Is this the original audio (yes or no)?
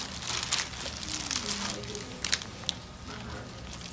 yes